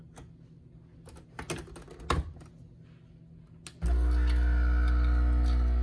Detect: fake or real real